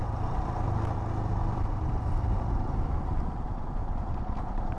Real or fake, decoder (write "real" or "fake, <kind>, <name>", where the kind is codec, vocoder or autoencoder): real